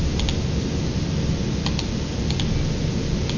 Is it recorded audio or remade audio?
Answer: recorded